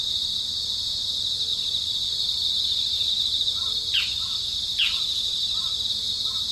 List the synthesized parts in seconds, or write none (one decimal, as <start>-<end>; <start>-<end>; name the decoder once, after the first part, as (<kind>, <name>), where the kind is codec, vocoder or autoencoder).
1.5-3.1 (vocoder, BigVGAN v2)